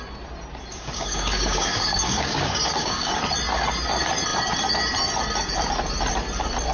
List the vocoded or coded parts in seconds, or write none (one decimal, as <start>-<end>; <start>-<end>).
0.7-3.1